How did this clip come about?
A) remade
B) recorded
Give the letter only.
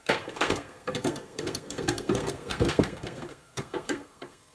A